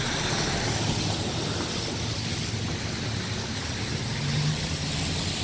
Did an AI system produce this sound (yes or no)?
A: no